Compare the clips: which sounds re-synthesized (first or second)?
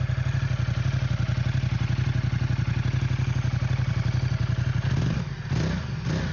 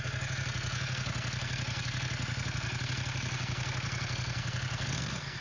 second